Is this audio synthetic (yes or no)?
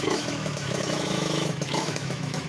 yes